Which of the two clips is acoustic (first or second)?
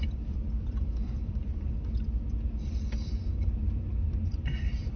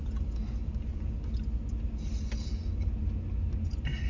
second